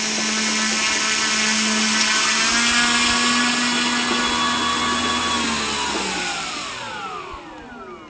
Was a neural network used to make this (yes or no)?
no